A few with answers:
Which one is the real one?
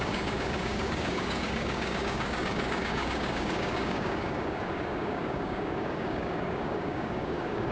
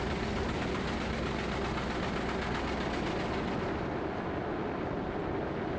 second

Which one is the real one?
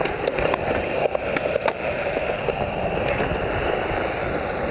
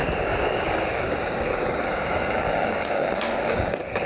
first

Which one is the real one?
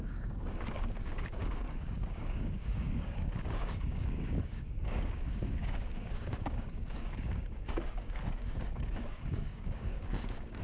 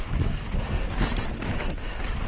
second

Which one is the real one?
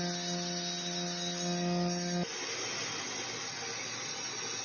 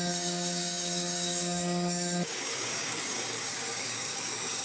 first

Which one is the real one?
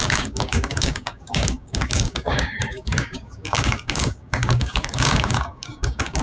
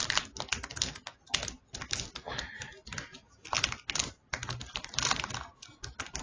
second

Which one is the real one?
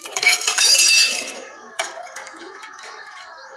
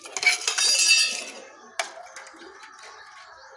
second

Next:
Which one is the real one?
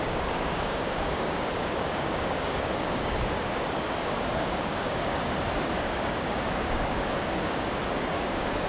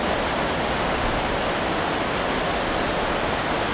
second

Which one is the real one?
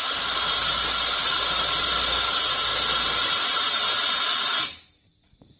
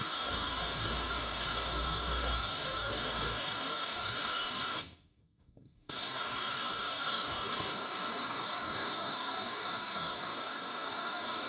first